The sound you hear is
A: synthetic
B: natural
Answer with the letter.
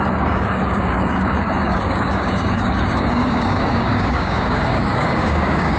A